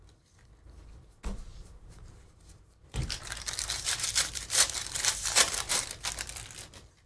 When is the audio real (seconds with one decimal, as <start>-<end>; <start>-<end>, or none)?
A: 0.0-1.5; 5.8-7.1